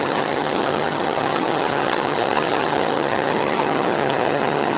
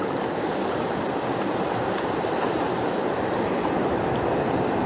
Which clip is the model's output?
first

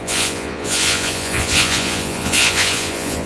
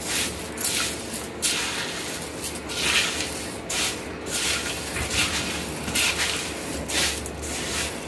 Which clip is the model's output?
first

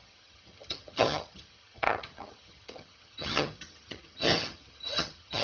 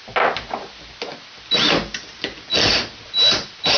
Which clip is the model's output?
first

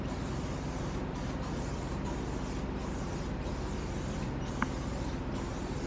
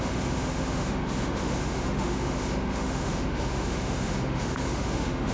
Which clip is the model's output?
second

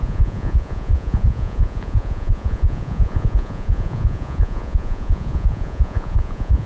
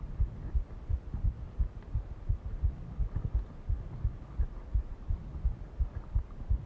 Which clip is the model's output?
first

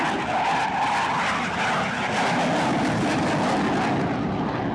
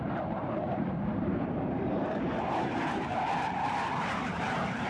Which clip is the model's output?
second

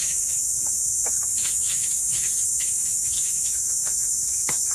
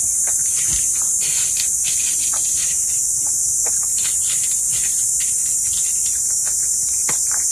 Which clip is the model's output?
first